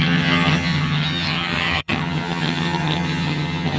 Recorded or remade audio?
remade